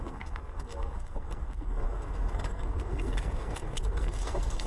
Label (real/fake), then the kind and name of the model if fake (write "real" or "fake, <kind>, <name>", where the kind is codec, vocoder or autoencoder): fake, codec, SNAC